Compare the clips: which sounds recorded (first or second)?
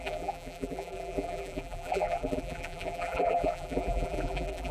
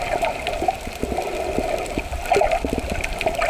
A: second